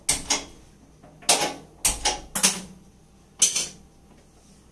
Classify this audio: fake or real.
real